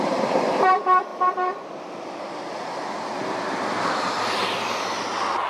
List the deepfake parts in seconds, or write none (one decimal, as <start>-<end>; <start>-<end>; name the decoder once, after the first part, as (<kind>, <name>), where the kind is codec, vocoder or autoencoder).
1.1-4.4 (vocoder, BigVGAN v2)